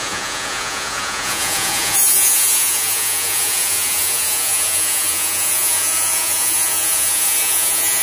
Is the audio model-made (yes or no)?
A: yes